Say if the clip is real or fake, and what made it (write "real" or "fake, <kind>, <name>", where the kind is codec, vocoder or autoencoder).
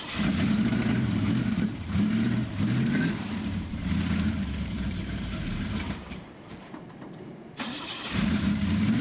fake, vocoder, BigVGAN v2